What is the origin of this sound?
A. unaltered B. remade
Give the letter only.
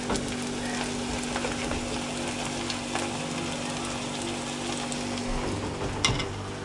A